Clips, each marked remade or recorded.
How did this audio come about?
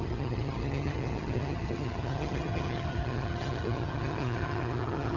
remade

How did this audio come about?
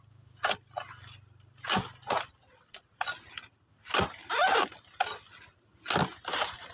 recorded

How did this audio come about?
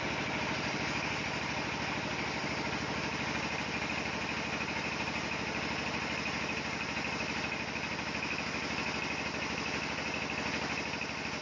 recorded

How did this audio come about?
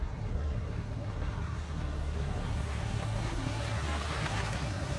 remade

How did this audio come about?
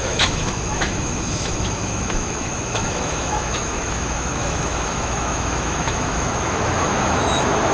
remade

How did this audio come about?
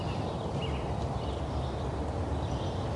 recorded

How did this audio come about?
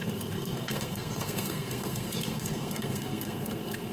remade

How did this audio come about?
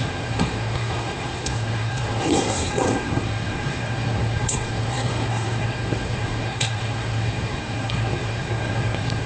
remade